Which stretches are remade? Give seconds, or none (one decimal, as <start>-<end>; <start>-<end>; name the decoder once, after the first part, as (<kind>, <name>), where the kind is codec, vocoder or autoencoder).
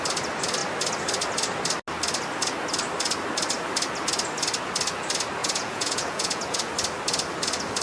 5.4-6.7 (vocoder, Vocos)